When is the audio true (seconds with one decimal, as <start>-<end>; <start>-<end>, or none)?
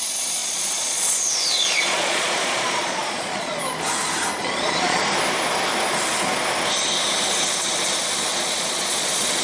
0.0-0.4; 3.6-4.4; 5.0-8.3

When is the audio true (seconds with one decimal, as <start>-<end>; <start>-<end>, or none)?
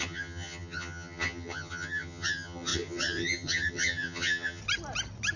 4.6-5.4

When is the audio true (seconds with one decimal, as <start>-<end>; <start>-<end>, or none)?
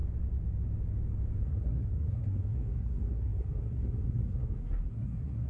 0.0-1.4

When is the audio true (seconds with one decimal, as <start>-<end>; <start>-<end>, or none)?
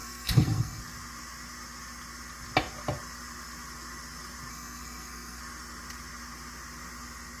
0.8-4.5; 5.4-7.4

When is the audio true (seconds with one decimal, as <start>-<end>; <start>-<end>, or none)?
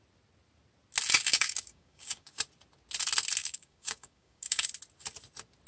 0.0-1.3; 2.4-3.4; 4.7-5.7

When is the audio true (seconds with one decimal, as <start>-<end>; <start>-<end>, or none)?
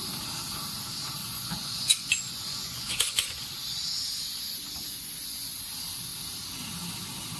0.0-1.2; 5.6-7.4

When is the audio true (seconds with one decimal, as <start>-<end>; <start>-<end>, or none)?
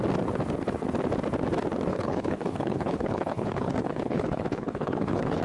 0.0-1.9